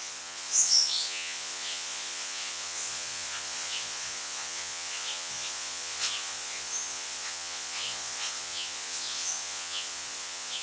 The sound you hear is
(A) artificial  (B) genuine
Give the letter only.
A